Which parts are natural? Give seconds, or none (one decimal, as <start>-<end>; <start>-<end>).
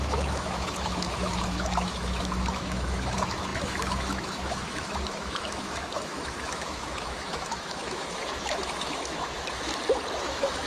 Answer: 9.7-10.2